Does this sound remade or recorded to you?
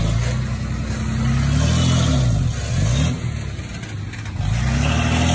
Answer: recorded